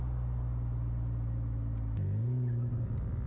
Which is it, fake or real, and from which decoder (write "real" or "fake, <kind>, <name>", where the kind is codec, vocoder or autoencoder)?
real